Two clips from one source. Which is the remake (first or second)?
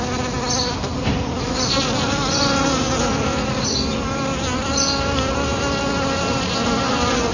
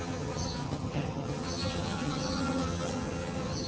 second